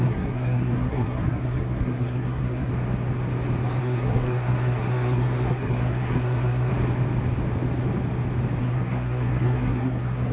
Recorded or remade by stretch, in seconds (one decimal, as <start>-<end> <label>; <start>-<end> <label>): 0.0-2.7 remade; 2.7-3.8 recorded; 3.8-6.7 remade; 6.7-8.6 recorded; 8.6-10.3 remade